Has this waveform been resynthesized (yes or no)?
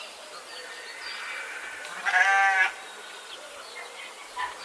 no